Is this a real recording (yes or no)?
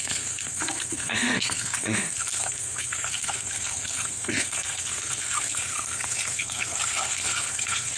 no